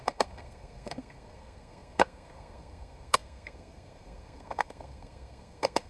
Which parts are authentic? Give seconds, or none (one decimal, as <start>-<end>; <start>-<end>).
none